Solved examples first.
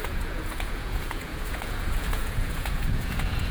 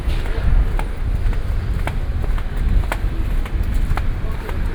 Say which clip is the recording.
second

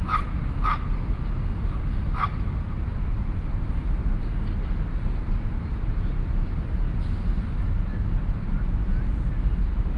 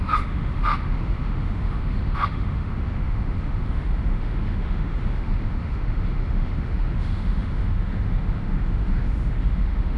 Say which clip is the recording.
first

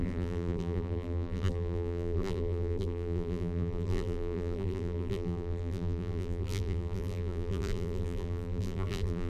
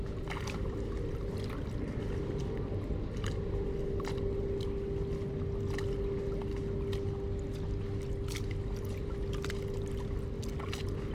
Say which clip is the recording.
second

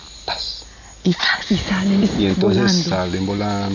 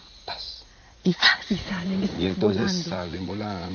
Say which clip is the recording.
first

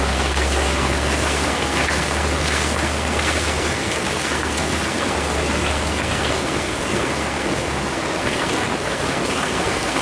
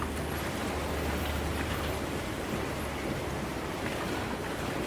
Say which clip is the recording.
second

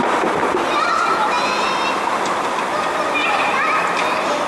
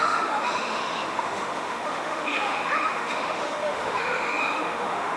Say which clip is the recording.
first